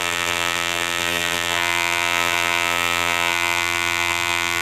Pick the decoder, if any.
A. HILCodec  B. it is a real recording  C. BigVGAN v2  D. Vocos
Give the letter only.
C